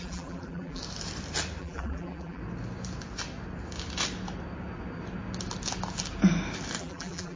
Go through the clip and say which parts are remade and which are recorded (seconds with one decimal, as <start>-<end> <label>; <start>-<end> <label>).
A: 0.0-0.8 remade; 0.8-1.6 recorded; 1.6-2.4 remade; 2.4-6.8 recorded; 6.8-7.4 remade